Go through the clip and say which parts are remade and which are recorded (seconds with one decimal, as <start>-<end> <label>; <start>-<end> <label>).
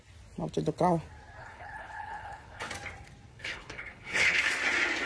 0.0-1.4 recorded; 1.4-2.7 remade; 2.7-3.3 recorded; 3.3-4.4 remade; 4.4-5.1 recorded